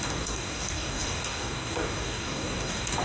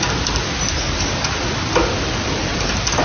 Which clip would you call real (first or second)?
second